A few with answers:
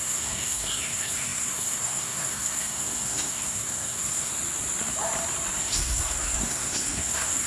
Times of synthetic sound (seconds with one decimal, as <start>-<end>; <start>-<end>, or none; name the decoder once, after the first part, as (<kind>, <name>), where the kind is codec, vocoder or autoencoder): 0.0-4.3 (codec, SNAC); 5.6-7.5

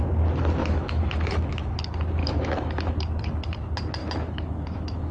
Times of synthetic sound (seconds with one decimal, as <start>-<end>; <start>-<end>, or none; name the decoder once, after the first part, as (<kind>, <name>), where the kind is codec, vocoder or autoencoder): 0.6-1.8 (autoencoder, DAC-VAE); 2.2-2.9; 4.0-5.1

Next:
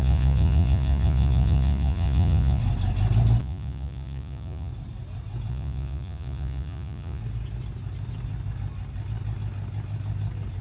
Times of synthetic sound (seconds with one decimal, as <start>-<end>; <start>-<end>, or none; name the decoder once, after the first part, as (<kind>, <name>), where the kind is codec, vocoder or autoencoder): 0.0-2.6 (vocoder, Vocos); 3.4-4.7; 5.5-7.2

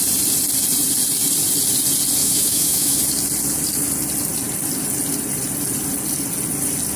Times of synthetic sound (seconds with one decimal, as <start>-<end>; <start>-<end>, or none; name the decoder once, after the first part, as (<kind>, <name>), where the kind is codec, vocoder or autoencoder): 2.2-3.0 (autoencoder, DAC-VAE)

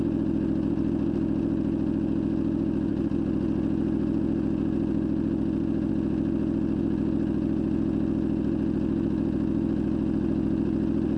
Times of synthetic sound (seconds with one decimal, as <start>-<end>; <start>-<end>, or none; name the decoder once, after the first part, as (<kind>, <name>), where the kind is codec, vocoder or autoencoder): none